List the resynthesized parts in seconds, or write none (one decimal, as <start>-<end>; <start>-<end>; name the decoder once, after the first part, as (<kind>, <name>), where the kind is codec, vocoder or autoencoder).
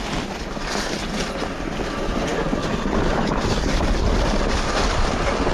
none